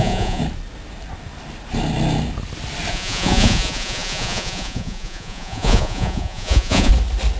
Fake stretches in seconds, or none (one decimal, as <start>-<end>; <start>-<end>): 0.0-0.4; 2.9-6.9